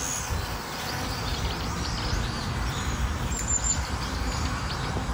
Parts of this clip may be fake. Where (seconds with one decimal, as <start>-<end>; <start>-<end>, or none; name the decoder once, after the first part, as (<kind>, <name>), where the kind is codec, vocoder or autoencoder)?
1.3-4.4 (vocoder, BigVGAN v2)